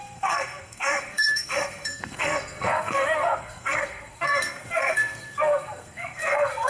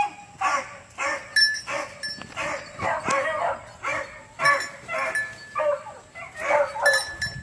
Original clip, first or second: second